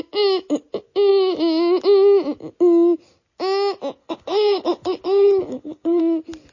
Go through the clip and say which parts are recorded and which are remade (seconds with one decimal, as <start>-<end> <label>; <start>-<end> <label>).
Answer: 0.0-4.0 recorded; 4.0-6.0 remade; 6.0-6.5 recorded